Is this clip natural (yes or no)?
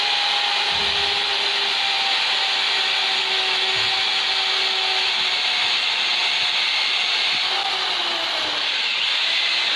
yes